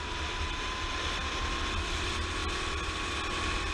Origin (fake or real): real